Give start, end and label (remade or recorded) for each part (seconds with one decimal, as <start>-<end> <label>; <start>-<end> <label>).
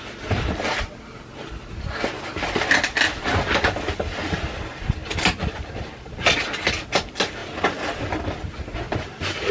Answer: 0.0-9.5 recorded